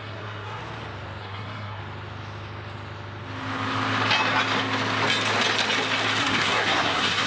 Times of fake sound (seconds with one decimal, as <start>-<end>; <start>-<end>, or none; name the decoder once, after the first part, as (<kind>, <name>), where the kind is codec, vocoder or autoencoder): 0.0-0.6 (codec, SNAC); 1.2-1.8; 6.2-7.3